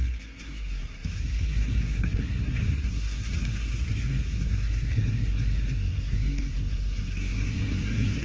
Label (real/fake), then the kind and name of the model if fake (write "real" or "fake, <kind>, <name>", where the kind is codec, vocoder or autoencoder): fake, codec, SNAC